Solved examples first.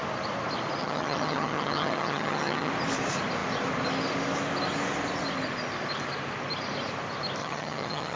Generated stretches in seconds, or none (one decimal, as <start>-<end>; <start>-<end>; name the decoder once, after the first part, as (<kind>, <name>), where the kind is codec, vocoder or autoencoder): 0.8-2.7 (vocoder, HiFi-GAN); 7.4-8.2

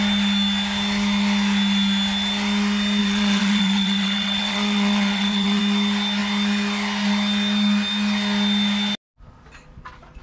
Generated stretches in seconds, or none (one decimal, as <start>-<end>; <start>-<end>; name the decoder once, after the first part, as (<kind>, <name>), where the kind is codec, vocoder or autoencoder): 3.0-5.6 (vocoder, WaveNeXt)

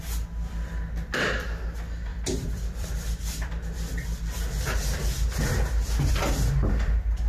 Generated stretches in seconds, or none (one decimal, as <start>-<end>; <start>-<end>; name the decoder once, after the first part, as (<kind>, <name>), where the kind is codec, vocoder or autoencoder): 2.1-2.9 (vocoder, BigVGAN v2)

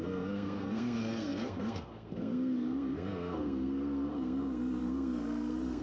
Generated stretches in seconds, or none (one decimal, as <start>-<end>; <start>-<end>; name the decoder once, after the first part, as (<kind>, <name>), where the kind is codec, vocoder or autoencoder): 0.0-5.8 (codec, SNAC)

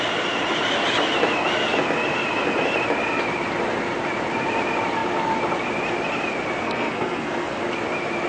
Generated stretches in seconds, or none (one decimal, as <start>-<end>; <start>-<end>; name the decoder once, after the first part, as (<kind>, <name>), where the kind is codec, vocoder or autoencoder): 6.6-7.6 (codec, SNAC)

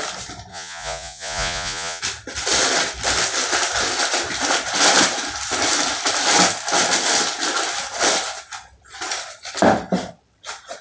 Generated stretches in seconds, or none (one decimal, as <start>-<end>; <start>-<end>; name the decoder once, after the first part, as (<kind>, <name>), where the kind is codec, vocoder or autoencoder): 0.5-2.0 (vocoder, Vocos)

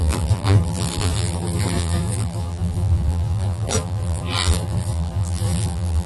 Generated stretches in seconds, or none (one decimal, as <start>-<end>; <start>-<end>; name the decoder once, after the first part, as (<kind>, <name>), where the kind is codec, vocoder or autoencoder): 0.0-6.1 (vocoder, BigVGAN v2)

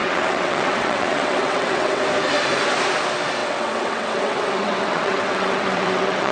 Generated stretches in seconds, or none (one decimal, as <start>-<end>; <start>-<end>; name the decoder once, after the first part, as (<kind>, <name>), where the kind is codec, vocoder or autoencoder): 0.0-2.0 (vocoder, WaveNeXt); 3.4-6.3